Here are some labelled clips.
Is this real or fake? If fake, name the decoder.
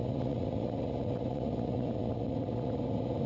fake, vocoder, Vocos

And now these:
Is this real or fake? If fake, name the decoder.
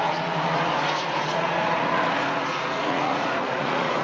fake, vocoder, Vocos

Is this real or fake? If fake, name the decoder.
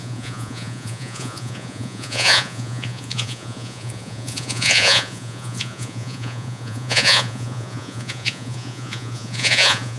fake, vocoder, Vocos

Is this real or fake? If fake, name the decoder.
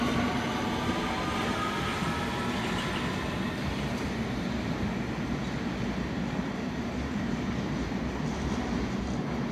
real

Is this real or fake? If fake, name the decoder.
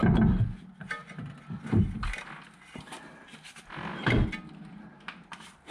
real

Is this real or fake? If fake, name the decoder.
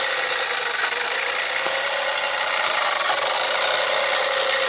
real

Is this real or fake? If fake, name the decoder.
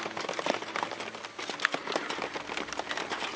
real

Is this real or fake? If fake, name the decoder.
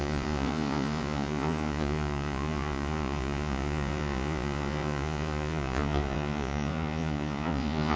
fake, vocoder, Vocos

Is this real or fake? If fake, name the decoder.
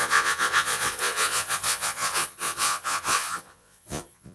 fake, vocoder, Vocos